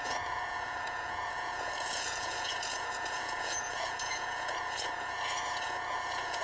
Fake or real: fake